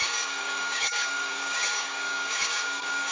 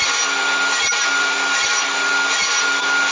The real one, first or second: second